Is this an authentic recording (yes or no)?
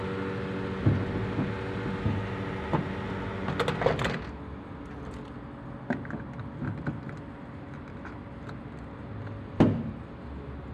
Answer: yes